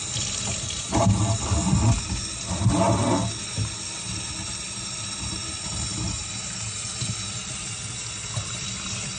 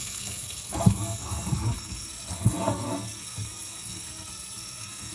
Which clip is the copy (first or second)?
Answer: second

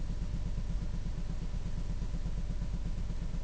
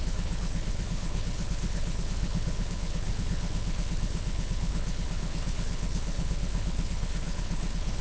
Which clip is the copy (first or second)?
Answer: second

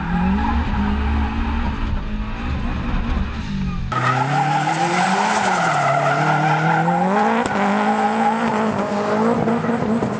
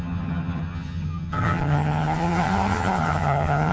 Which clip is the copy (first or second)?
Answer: second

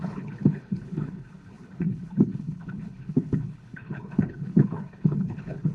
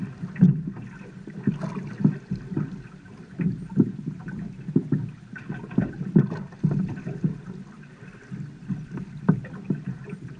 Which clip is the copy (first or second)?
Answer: first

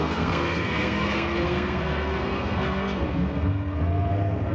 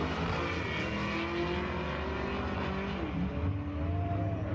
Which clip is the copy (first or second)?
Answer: first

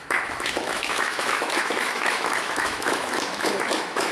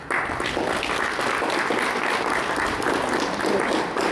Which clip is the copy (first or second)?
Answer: first